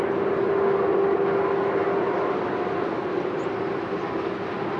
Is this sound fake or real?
real